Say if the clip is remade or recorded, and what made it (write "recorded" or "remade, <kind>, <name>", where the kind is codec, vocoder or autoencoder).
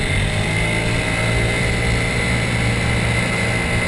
recorded